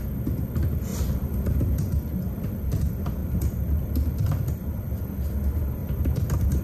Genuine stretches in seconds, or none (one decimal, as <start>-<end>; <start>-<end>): 0.0-0.9; 1.8-3.2; 5.0-5.8